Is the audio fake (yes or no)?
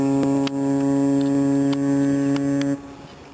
no